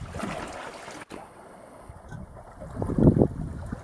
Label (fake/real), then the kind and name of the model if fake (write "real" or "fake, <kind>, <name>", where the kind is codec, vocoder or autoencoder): real